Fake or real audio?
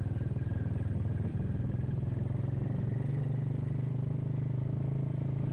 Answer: real